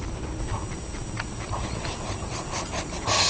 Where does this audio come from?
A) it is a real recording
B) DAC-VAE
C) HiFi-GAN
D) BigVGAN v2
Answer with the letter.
A